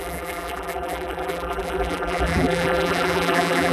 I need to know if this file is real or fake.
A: fake